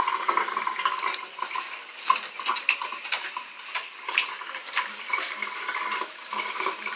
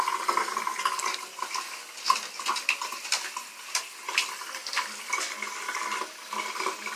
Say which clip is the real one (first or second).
second